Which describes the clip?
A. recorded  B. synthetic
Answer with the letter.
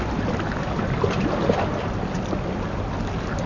A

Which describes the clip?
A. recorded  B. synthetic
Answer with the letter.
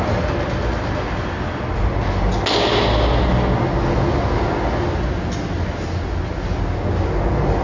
A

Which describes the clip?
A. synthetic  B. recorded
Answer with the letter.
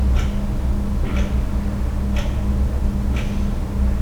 B